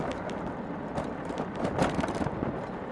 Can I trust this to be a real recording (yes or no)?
yes